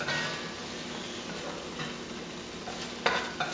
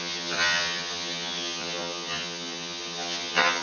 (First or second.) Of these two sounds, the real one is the first